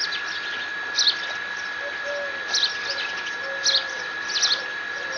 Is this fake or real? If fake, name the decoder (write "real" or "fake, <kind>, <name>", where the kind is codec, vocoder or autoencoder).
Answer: real